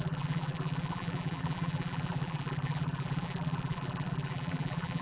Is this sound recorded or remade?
remade